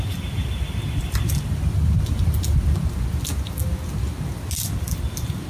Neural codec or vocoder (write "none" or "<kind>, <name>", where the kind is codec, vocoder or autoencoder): none